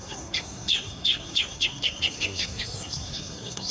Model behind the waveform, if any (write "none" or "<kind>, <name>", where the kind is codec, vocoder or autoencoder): codec, SNAC